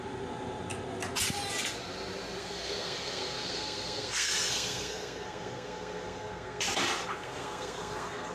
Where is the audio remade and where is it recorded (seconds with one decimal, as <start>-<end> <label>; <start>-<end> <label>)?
0.0-2.4 recorded; 2.4-6.6 remade; 6.6-7.1 recorded; 7.1-8.3 remade